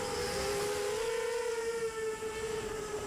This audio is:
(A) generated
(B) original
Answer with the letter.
B